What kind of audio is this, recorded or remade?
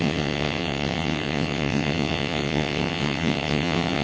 remade